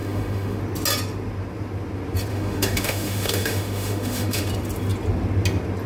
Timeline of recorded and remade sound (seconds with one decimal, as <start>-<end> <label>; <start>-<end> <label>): 0.0-0.6 remade; 0.6-2.3 recorded; 2.3-4.5 remade; 4.5-5.9 recorded